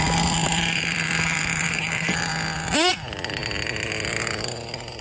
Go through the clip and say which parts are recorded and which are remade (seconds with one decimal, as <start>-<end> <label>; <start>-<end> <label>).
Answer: 0.0-2.3 remade; 2.3-2.9 recorded; 2.9-3.4 remade; 3.4-4.1 recorded; 4.1-5.0 remade